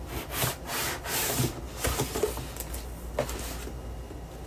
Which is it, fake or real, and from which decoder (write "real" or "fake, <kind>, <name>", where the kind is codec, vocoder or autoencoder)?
real